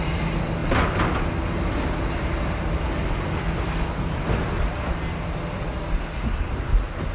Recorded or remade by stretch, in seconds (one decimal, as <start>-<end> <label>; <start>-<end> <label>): 0.0-7.1 recorded